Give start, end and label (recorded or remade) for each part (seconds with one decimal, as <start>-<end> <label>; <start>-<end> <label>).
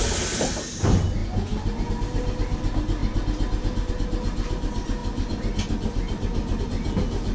0.0-7.3 recorded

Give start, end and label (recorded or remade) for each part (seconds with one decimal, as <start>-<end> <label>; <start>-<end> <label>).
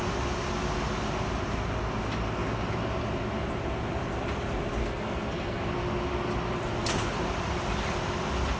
0.0-4.8 recorded; 4.8-5.6 remade; 5.6-8.6 recorded